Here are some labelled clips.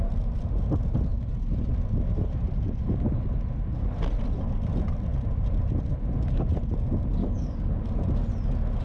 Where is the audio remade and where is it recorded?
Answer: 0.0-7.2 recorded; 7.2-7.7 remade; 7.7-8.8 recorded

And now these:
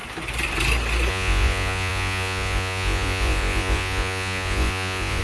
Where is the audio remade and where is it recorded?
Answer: 0.0-1.1 recorded; 1.1-5.2 remade

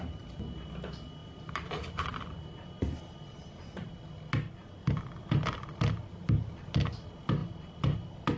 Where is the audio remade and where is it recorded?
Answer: 0.0-8.4 recorded

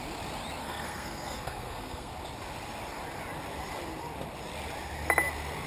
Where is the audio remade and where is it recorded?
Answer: 0.0-0.6 recorded; 0.6-2.1 remade; 2.1-5.7 recorded

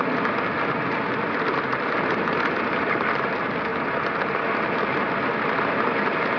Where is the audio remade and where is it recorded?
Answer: 0.0-1.7 recorded; 1.7-3.3 remade; 3.3-6.4 recorded

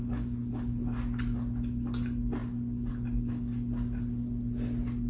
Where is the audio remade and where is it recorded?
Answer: 0.0-5.1 recorded

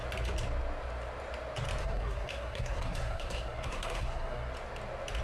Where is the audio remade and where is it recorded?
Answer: 0.0-1.8 recorded; 1.8-4.5 remade; 4.5-5.2 recorded

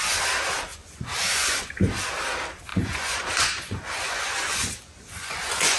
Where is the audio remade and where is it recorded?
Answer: 0.0-0.7 recorded; 0.7-1.7 remade; 1.7-2.7 recorded; 2.7-5.8 remade